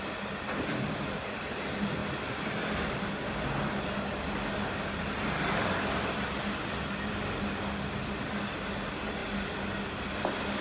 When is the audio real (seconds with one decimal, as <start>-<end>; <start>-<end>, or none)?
0.0-10.6